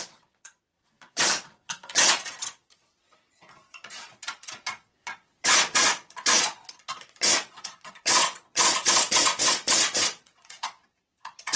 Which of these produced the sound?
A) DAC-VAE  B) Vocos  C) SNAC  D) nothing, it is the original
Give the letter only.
B